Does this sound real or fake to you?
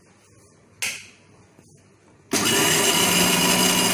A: real